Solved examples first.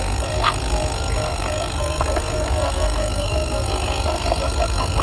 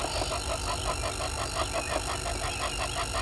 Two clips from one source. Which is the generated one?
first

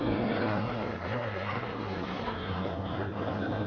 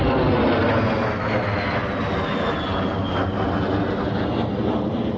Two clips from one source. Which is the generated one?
first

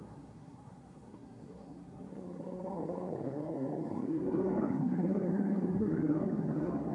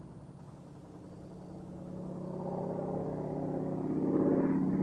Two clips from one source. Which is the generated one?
first